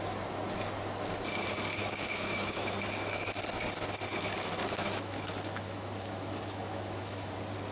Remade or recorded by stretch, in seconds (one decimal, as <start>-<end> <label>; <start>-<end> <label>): 0.0-1.8 recorded; 1.8-2.7 remade; 2.7-4.6 recorded; 4.6-7.3 remade; 7.3-7.7 recorded